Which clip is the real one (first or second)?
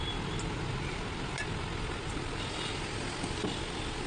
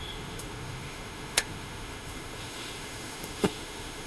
first